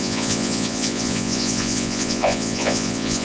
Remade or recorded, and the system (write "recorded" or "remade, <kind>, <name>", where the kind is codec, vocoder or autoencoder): remade, vocoder, Vocos